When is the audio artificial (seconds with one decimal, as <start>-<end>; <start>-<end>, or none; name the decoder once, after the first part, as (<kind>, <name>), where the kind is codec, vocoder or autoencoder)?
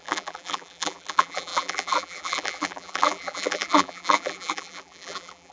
0.0-5.5 (vocoder, BigVGAN v2)